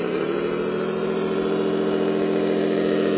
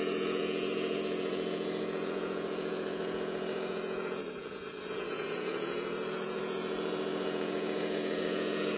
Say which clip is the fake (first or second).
second